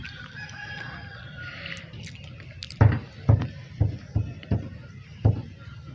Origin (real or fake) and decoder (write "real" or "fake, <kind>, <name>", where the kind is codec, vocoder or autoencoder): real